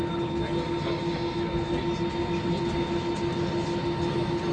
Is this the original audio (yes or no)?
yes